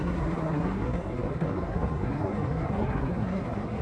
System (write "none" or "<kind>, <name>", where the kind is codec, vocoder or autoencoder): codec, SNAC